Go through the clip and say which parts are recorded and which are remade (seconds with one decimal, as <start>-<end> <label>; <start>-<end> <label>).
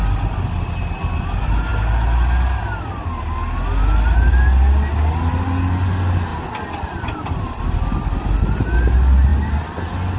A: 0.0-10.2 recorded